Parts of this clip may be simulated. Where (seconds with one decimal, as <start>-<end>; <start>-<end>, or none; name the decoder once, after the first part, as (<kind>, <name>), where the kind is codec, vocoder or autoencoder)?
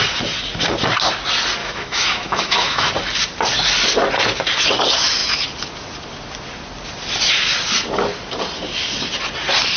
1.6-2.9 (autoencoder, DAC-VAE)